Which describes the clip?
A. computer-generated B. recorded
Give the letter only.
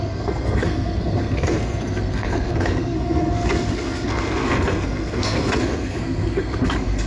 A